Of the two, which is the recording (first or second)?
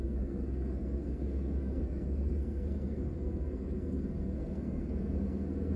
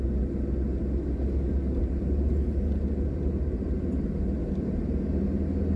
second